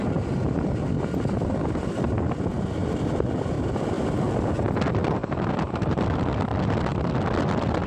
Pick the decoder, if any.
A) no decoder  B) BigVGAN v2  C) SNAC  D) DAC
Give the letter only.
B